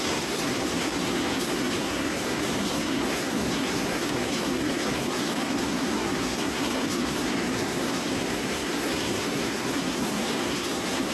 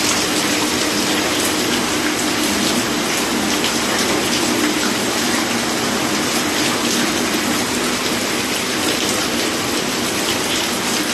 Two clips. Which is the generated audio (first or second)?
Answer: first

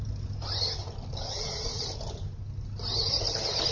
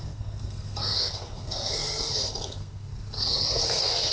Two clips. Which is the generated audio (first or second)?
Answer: second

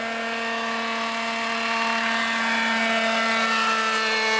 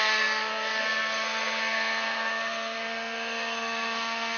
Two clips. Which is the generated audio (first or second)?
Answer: second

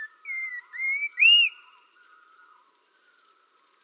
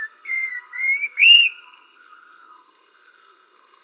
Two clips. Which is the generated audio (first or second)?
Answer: second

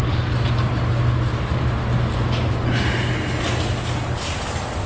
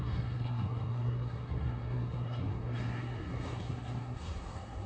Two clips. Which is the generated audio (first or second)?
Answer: second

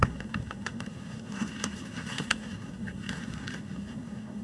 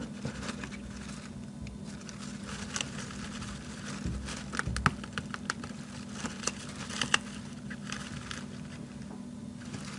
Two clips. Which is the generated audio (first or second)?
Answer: first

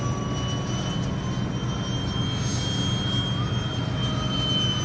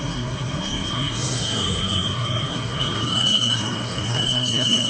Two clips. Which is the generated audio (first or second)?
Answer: second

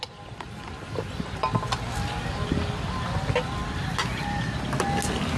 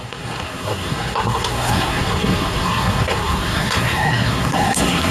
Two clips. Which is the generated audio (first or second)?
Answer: second